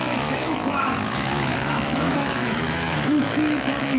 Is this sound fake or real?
fake